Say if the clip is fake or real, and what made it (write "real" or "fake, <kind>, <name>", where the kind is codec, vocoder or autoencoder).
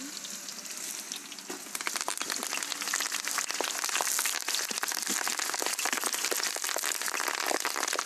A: real